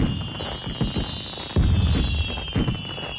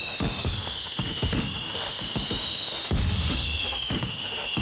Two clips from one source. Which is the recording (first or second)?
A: first